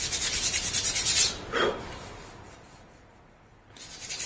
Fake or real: real